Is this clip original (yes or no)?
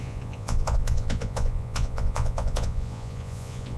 no